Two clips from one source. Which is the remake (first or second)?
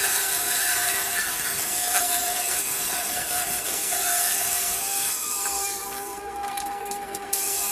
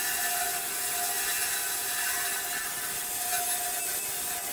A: first